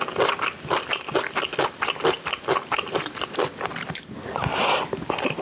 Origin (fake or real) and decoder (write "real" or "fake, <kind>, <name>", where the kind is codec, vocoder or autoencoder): real